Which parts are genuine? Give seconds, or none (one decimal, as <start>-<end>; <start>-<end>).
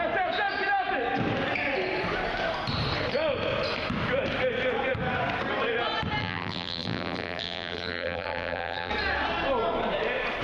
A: 0.0-6.2; 8.9-10.4